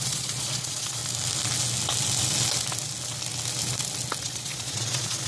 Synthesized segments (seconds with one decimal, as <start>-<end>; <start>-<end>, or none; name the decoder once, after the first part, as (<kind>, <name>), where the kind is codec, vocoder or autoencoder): 0.0-1.0 (vocoder, Vocos); 4.2-5.3